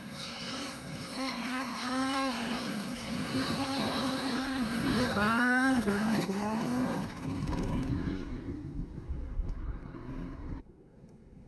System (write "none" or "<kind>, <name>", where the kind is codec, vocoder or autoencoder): codec, SNAC